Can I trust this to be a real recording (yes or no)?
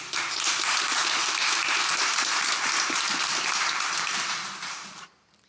no